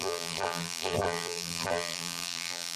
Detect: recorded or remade remade